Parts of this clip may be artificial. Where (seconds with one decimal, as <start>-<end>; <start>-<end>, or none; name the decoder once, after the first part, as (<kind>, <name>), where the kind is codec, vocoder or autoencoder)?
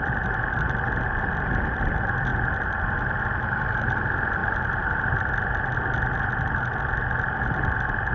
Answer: none